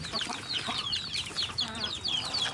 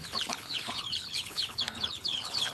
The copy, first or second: second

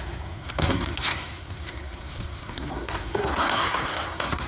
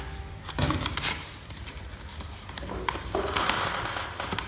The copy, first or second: first